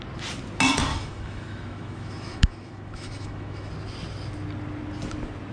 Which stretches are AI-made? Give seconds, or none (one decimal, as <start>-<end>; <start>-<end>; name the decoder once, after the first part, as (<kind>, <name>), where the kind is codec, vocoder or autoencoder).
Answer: 0.9-3.7 (autoencoder, DAC-VAE)